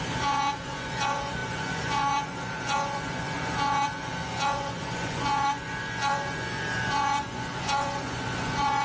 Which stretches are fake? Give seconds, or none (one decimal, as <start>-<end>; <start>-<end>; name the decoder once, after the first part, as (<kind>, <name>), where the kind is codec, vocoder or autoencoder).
0.0-8.8 (vocoder, Vocos)